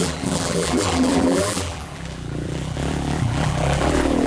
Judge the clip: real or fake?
fake